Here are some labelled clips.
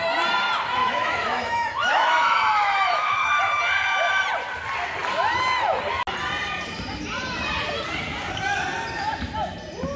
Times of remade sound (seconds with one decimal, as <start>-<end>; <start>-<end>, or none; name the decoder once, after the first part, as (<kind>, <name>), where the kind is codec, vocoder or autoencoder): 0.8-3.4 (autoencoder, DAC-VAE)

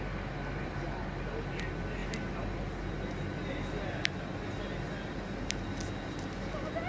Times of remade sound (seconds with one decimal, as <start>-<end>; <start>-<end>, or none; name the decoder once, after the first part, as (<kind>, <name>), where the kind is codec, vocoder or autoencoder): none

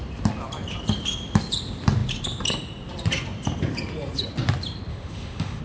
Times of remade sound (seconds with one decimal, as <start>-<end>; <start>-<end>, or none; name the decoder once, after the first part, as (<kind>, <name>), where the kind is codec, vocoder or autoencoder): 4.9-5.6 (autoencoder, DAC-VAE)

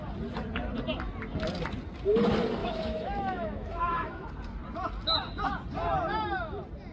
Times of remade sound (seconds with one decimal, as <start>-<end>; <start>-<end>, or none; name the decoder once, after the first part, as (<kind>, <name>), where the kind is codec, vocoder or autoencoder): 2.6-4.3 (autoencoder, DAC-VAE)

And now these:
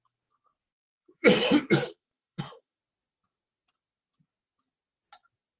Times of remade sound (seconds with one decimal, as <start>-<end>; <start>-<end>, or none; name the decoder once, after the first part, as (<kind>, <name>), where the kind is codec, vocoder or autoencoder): 0.9-2.8 (autoencoder, DAC-VAE)

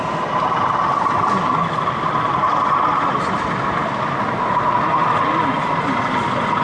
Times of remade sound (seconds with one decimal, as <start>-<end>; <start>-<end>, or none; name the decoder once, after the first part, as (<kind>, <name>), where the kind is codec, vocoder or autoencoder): none